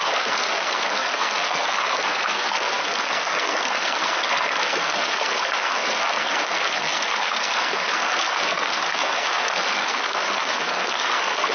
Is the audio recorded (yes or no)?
no